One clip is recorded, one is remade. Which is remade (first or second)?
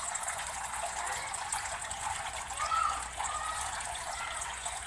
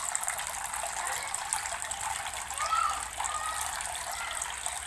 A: first